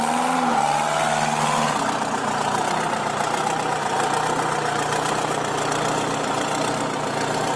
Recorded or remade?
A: recorded